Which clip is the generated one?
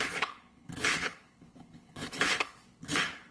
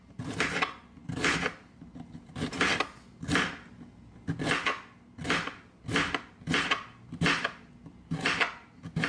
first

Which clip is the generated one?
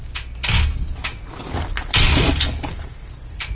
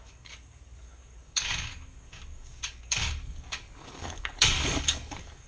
second